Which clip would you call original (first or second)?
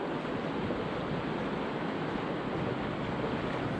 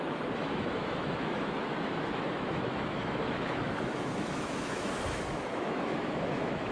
first